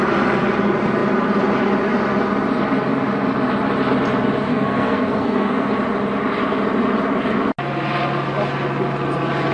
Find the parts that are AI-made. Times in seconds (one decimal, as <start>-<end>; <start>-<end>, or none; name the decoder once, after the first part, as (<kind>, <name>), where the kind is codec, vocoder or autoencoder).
4.5-5.7 (codec, SNAC)